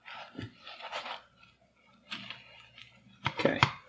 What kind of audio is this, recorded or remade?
recorded